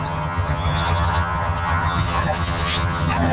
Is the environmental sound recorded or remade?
remade